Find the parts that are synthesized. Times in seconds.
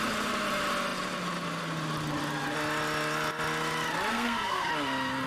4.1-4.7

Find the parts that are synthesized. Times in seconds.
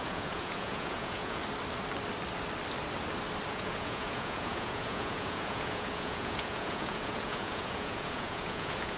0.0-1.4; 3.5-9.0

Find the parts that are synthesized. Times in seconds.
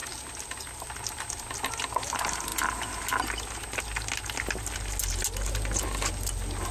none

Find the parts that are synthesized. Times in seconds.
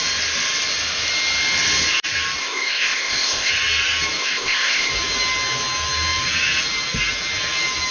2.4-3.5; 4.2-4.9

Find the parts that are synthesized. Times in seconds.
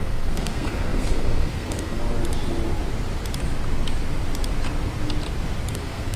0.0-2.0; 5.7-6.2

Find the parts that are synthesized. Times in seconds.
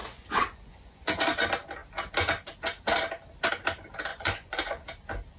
0.0-1.2; 4.1-4.8